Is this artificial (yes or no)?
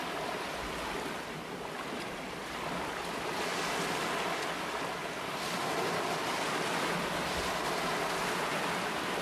no